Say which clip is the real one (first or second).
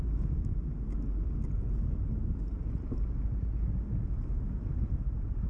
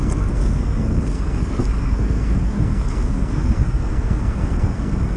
first